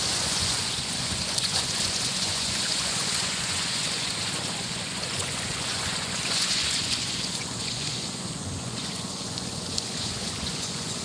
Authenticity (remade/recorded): remade